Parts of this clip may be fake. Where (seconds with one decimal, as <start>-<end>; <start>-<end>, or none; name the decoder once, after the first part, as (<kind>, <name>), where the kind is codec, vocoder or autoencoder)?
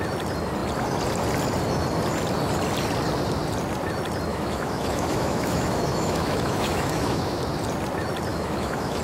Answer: 4.3-7.4 (autoencoder, DAC-VAE); 8.3-9.0